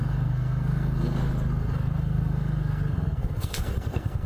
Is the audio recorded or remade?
remade